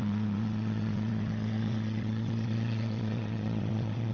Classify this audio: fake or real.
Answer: fake